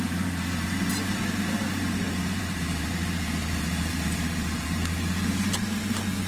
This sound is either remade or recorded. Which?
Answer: remade